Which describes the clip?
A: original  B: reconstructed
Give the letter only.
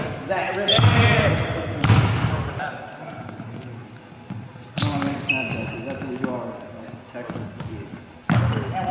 A